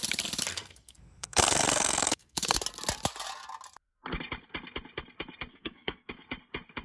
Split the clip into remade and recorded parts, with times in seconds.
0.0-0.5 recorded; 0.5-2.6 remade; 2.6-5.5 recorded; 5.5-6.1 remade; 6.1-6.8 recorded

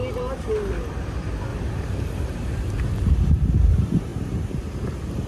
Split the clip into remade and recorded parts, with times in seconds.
0.0-1.5 recorded; 1.5-3.3 remade; 3.3-4.1 recorded; 4.1-4.6 remade; 4.6-5.3 recorded

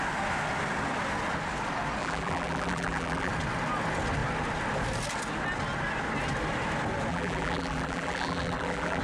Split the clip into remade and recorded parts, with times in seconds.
0.0-2.0 recorded; 2.0-3.3 remade; 3.3-7.1 recorded; 7.1-9.0 remade

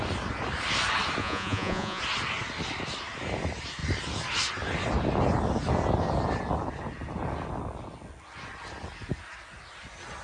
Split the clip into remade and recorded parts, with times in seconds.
0.0-1.2 recorded; 1.2-2.0 remade; 2.0-10.2 recorded

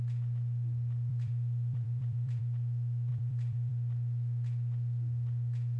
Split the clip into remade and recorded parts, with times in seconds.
0.0-1.1 recorded; 1.1-2.4 remade; 2.4-3.1 recorded; 3.1-3.7 remade; 3.7-5.8 recorded